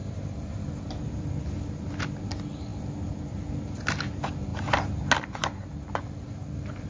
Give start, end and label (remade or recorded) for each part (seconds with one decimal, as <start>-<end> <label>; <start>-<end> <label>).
0.0-6.9 recorded